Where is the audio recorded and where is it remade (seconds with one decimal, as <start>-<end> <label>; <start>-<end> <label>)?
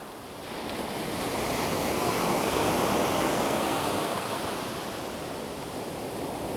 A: 0.0-1.7 recorded; 1.7-2.7 remade; 2.7-3.1 recorded; 3.1-4.4 remade; 4.4-6.6 recorded